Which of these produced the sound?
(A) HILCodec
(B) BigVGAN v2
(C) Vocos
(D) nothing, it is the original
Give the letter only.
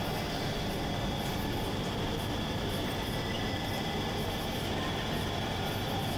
D